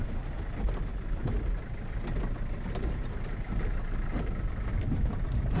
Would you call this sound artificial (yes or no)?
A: no